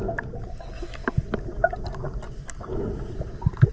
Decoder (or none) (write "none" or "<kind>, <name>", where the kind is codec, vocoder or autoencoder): none